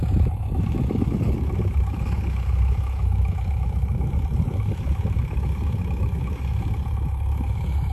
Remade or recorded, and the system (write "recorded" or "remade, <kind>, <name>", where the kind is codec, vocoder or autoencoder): remade, autoencoder, DAC-VAE